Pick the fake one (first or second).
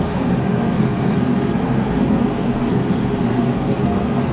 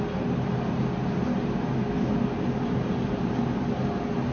first